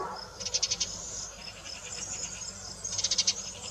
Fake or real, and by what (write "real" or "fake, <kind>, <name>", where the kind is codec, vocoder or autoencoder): real